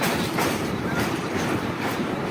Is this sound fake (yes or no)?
yes